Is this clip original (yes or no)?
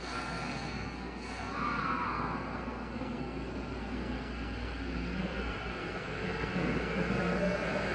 no